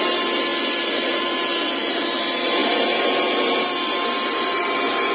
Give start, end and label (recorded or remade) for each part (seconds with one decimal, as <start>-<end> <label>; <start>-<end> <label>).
0.0-5.1 recorded